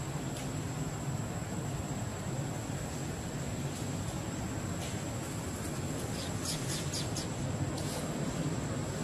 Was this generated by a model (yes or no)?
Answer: no